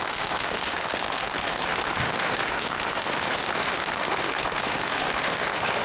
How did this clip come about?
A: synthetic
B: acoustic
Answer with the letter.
A